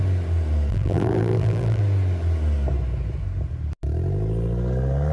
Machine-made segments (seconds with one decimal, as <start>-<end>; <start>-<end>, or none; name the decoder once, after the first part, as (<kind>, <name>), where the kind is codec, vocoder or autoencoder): 0.7-1.8 (vocoder, BigVGAN v2)